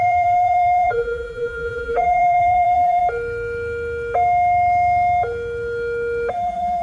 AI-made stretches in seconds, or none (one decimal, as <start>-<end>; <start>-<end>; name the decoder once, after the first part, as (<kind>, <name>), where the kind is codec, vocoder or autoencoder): 0.0-3.0 (vocoder, BigVGAN v2); 6.3-6.8